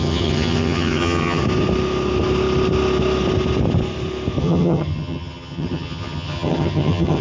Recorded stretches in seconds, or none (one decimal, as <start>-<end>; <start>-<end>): 1.4-4.4